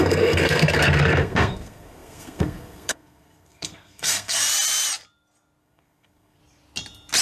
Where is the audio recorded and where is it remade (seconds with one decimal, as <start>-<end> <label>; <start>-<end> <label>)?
0.0-4.4 remade; 4.4-5.6 recorded; 5.6-6.4 remade; 6.4-7.2 recorded